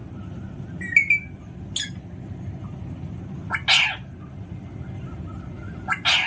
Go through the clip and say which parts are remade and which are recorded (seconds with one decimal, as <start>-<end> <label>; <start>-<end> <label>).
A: 0.0-0.6 remade; 0.6-6.3 recorded